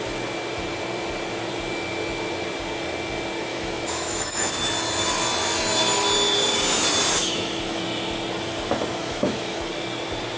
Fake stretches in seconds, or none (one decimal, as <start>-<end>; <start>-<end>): 3.5-4.5; 7.2-7.8; 9.0-9.6